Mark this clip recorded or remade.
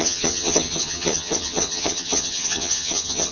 remade